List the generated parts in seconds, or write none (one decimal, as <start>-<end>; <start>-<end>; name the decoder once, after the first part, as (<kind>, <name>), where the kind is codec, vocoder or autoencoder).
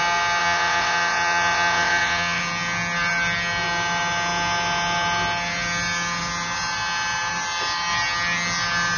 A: 0.4-2.4 (vocoder, WaveNeXt)